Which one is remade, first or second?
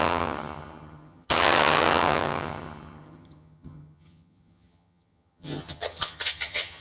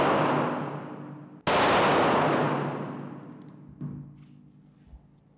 first